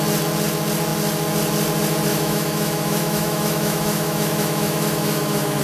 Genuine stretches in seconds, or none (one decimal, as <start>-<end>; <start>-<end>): 0.0-2.1